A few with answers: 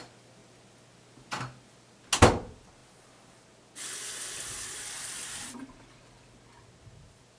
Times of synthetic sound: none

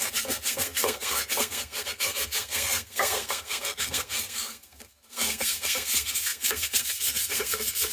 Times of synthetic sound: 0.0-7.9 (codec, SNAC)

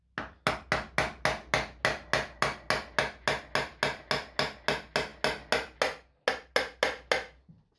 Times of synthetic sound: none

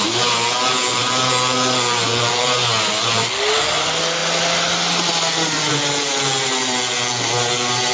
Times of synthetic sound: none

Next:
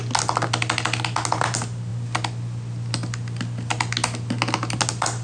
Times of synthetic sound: none

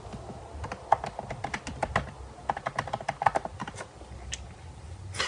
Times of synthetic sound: none